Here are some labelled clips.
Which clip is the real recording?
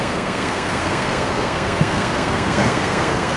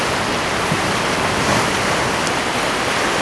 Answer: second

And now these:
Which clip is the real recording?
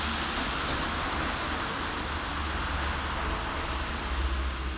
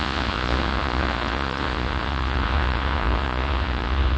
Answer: first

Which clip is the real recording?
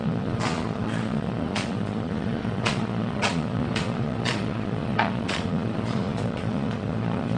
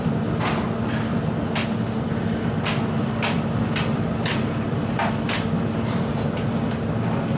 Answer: second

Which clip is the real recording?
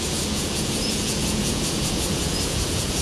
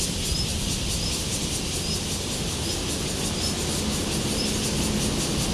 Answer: second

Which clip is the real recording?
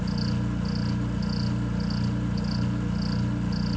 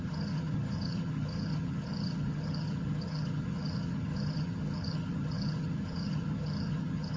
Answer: first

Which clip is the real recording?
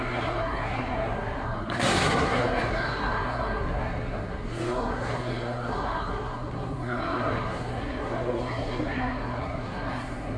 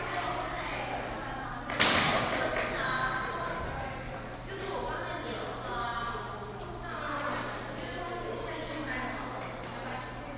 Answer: second